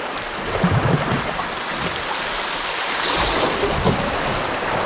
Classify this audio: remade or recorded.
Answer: recorded